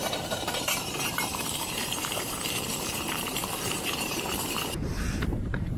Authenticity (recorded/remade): remade